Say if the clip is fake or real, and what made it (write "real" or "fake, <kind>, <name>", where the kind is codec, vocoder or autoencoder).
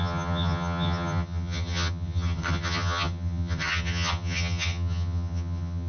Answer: fake, vocoder, HiFi-GAN